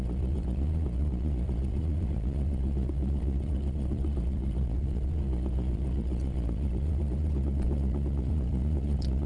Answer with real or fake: fake